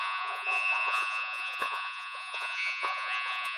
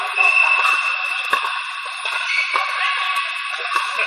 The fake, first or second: first